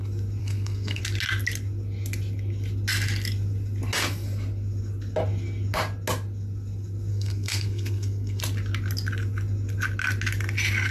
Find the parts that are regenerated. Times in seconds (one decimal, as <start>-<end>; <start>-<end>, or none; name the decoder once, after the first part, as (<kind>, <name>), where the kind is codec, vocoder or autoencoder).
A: 0.4-1.0 (codec, SNAC); 7.1-8.4